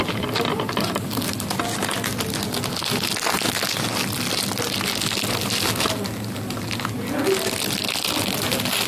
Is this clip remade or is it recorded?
recorded